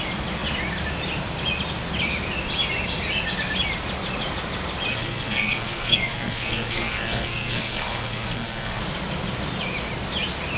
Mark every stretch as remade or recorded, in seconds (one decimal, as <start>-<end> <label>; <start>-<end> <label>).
0.0-4.9 recorded; 4.9-8.8 remade; 8.8-10.6 recorded